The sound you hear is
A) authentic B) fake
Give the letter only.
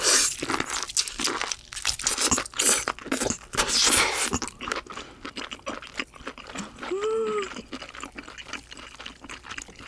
A